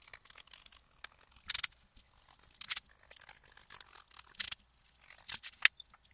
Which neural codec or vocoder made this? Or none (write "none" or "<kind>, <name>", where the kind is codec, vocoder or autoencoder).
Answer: none